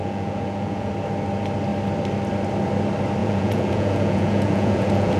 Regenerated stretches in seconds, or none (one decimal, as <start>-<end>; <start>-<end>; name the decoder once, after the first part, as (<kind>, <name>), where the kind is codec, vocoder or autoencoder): 0.0-0.9 (vocoder, Vocos); 3.2-5.2